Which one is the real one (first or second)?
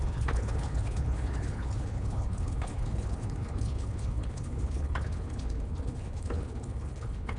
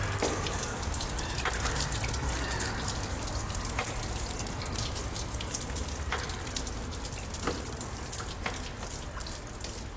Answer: second